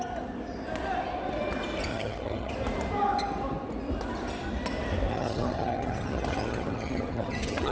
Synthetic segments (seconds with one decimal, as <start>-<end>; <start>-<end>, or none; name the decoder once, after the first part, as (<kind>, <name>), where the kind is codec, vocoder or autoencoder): 1.9-2.5 (vocoder, HiFi-GAN); 5.1-7.7